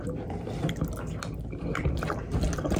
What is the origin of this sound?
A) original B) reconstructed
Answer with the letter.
A